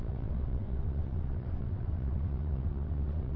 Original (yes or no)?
no